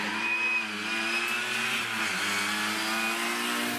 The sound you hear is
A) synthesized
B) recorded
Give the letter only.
B